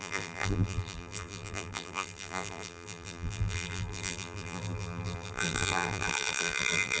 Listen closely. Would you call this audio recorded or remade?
remade